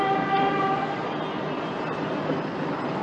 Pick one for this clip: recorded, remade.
recorded